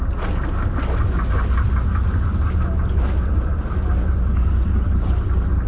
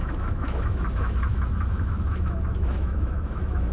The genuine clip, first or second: first